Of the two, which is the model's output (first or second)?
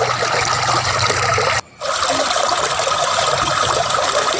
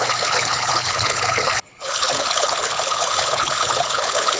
second